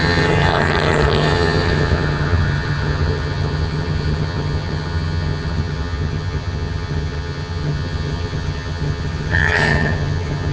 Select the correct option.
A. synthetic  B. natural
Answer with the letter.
A